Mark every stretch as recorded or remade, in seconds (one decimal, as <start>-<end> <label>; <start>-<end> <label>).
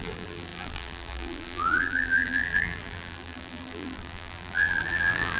0.0-5.4 remade